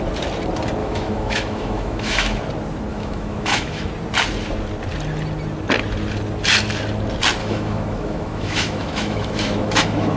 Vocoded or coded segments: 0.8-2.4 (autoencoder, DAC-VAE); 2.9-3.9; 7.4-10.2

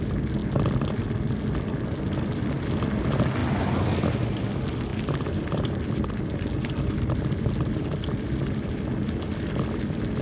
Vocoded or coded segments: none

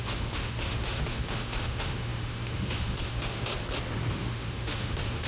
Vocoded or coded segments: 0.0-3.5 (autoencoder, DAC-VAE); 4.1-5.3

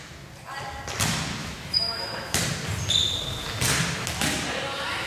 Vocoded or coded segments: 1.4-2.4 (autoencoder, DAC-VAE)

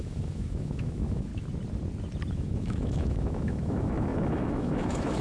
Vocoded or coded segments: 0.0-1.3 (autoencoder, DAC-VAE); 2.3-5.2

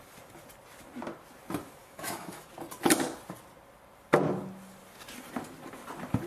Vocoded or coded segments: 1.8-2.5 (autoencoder, DAC-VAE)